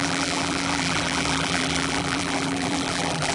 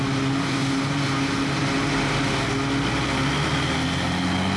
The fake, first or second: first